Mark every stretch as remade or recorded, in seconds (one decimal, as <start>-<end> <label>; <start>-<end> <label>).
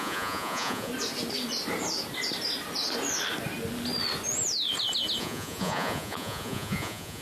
0.0-0.9 remade; 0.9-5.2 recorded; 5.2-7.2 remade